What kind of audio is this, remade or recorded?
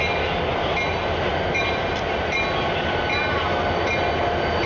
recorded